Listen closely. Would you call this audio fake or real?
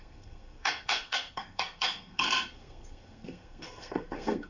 fake